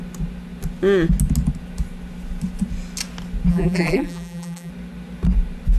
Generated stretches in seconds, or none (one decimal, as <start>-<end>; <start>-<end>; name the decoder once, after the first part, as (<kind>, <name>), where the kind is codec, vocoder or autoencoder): 3.5-4.7 (vocoder, BigVGAN v2)